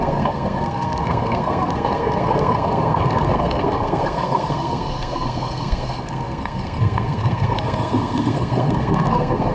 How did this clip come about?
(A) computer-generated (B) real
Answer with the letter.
A